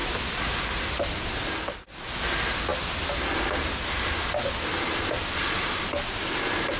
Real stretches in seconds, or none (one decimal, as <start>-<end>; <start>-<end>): 0.0-6.8